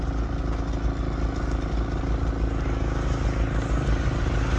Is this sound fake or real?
real